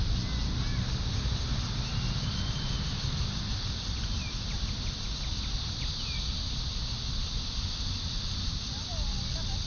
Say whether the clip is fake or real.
real